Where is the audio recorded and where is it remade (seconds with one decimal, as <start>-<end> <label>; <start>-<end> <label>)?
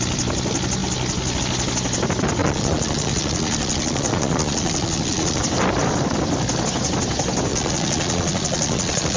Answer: 0.0-2.4 recorded; 2.4-5.4 remade; 5.4-7.5 recorded; 7.5-9.2 remade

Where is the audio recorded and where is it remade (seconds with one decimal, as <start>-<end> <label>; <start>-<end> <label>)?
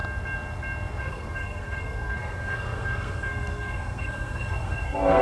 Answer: 0.0-1.0 recorded; 1.0-5.2 remade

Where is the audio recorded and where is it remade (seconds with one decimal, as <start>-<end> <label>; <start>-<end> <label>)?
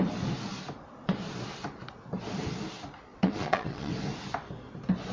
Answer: 0.0-3.1 recorded; 3.1-3.9 remade; 3.9-5.1 recorded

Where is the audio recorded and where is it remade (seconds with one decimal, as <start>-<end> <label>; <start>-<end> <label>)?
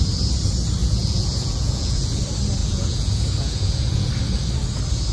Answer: 0.0-0.8 recorded; 0.8-2.2 remade; 2.2-2.6 recorded; 2.6-4.1 remade; 4.1-5.1 recorded